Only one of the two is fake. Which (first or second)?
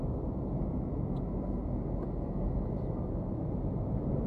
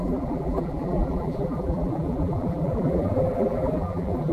second